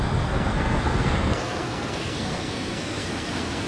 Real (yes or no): no